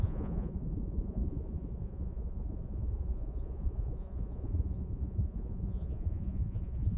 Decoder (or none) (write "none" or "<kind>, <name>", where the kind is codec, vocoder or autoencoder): vocoder, Vocos